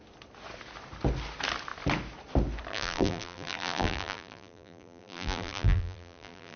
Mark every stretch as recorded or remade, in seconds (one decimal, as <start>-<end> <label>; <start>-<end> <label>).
0.0-2.7 recorded; 2.7-6.6 remade